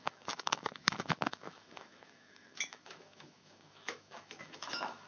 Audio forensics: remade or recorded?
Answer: remade